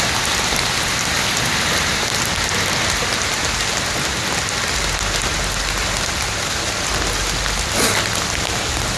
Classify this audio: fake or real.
real